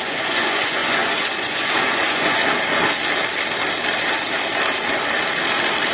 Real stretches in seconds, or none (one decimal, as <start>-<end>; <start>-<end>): 2.4-5.9